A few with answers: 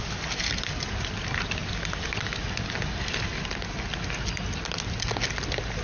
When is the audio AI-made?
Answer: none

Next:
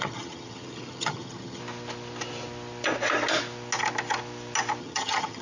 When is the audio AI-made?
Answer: 0.0-1.6 (vocoder, HiFi-GAN); 4.8-5.4

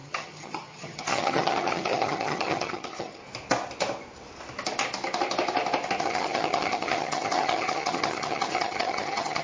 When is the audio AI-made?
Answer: 0.0-3.2 (vocoder, HiFi-GAN); 6.0-9.4

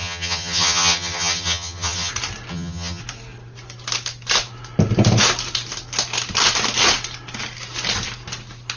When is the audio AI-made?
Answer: 0.0-2.1 (vocoder, HiFi-GAN); 2.5-3.0

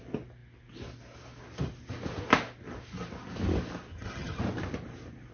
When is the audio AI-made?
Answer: 3.9-4.4 (vocoder, HiFi-GAN)

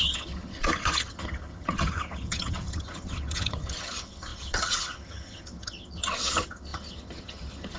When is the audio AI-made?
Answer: 0.0-7.8 (vocoder, HiFi-GAN)

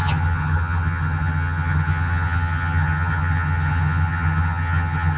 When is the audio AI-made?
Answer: 0.0-5.2 (vocoder, HiFi-GAN)

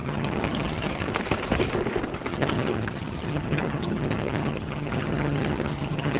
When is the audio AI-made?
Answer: 0.0-1.1 (vocoder, HiFi-GAN); 2.3-6.2